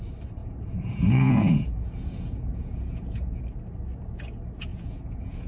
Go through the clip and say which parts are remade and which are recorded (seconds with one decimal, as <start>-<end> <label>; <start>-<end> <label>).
0.0-0.4 recorded; 0.4-3.4 remade; 3.4-4.7 recorded; 4.7-5.5 remade